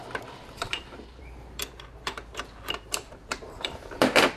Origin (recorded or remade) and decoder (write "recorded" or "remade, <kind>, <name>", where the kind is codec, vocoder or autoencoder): remade, vocoder, BigVGAN v2